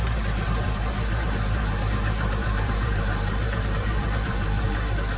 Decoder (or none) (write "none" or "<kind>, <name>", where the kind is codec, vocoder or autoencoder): vocoder, BigVGAN v2